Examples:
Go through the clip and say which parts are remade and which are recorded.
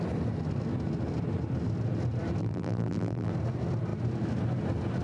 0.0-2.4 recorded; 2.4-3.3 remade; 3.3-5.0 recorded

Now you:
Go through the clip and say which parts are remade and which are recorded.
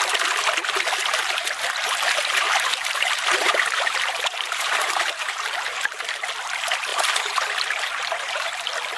0.0-1.2 recorded; 1.2-6.3 remade; 6.3-6.9 recorded; 6.9-8.6 remade; 8.6-9.0 recorded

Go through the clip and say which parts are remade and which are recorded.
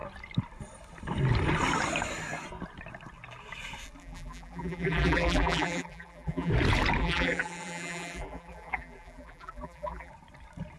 0.0-4.0 recorded; 4.0-6.5 remade; 6.5-7.0 recorded; 7.0-10.1 remade; 10.1-10.8 recorded